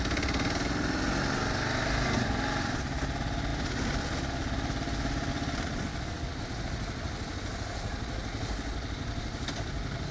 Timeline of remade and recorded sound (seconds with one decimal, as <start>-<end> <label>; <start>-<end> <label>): 0.0-5.9 recorded; 5.9-6.4 remade; 6.4-10.1 recorded